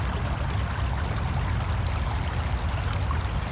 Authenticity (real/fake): real